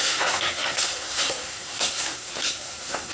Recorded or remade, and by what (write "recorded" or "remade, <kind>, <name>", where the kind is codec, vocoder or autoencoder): remade, codec, SNAC